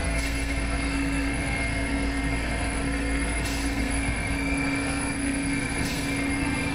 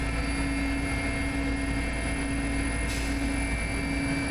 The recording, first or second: second